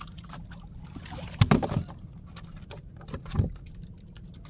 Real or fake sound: real